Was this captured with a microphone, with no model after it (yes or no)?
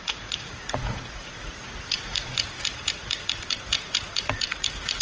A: no